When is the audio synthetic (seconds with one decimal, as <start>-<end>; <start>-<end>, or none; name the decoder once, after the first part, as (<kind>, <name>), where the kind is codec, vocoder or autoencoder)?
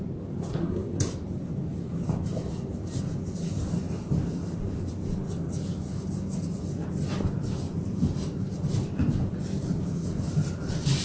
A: 0.5-1.0 (codec, SNAC)